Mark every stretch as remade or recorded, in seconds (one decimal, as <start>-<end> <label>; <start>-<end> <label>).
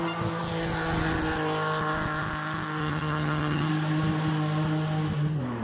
0.0-2.8 recorded; 2.8-3.7 remade; 3.7-5.6 recorded